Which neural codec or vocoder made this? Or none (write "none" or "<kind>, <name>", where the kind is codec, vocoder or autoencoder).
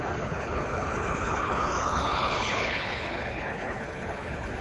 codec, HILCodec